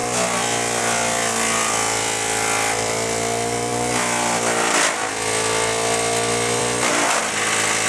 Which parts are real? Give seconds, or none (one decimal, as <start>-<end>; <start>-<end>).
0.0-6.6; 7.2-7.9